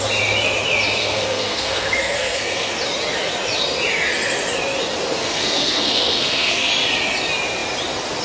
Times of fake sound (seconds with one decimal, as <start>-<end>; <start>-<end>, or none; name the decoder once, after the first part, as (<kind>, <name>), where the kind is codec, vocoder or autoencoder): 1.0-2.7 (codec, SNAC); 5.2-6.7